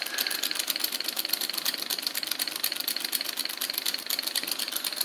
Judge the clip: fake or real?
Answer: real